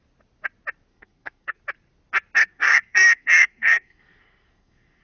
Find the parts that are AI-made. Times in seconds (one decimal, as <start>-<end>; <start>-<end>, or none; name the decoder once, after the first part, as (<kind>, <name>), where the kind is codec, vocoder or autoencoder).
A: 0.9-1.6 (codec, SNAC); 2.4-5.0